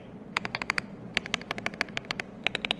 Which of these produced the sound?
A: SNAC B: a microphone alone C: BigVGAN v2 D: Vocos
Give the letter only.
C